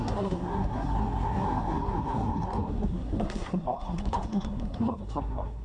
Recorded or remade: remade